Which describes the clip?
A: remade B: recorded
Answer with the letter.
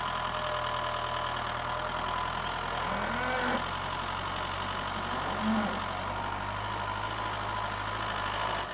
B